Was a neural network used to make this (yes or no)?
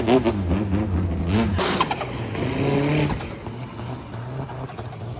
no